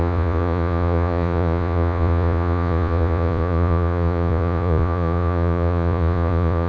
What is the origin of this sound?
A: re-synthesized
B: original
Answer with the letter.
A